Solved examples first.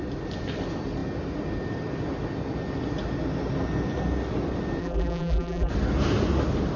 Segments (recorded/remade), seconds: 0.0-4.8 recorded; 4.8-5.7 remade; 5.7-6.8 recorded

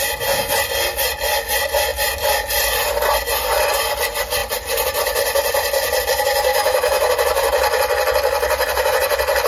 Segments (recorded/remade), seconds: 0.0-6.5 recorded; 6.5-7.1 remade; 7.1-9.5 recorded

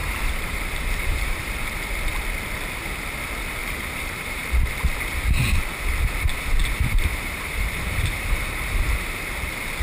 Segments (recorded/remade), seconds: 0.0-1.5 remade; 1.5-3.6 recorded; 3.6-4.5 remade; 4.5-6.6 recorded; 6.6-9.2 remade; 9.2-9.8 recorded

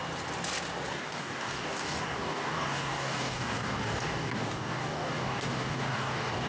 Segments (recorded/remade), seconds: 0.0-0.9 recorded; 0.9-6.5 remade

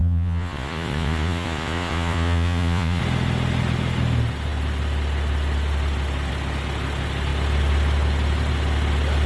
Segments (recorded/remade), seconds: 0.0-3.0 remade; 3.0-9.3 recorded

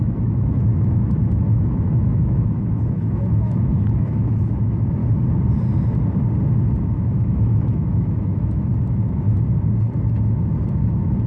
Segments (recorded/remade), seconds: 0.0-5.0 remade; 5.0-6.8 recorded; 6.8-8.7 remade; 8.7-10.7 recorded; 10.7-11.3 remade

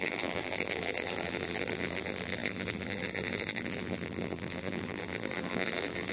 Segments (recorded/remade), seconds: 0.0-6.1 remade